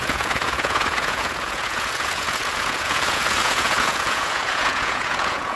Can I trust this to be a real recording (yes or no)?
no